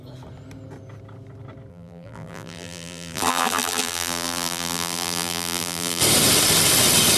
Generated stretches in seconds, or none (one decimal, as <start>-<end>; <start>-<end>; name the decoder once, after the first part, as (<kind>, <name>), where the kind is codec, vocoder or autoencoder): 1.7-6.0 (vocoder, BigVGAN v2)